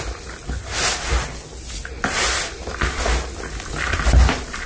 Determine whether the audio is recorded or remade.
recorded